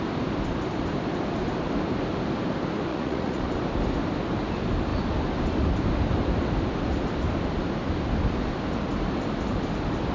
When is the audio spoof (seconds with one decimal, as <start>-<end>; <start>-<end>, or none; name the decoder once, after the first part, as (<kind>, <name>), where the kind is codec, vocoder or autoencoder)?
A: 2.9-3.4 (vocoder, Vocos)